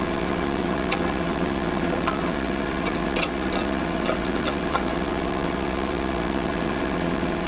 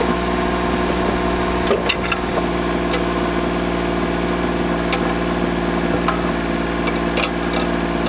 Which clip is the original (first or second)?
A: second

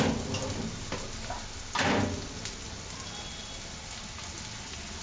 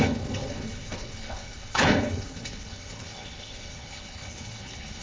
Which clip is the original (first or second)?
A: first